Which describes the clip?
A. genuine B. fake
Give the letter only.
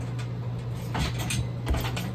A